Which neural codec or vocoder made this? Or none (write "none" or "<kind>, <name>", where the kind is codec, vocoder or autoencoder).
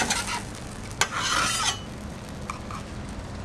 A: none